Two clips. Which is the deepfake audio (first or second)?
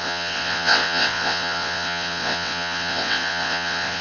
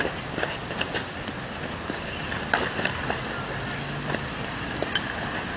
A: first